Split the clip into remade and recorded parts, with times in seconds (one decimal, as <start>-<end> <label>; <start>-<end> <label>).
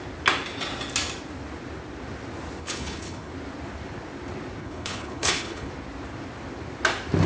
0.0-2.6 recorded; 2.6-3.3 remade; 3.3-4.6 recorded; 4.6-5.7 remade; 5.7-7.3 recorded